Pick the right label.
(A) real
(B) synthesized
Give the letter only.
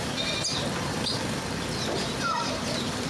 A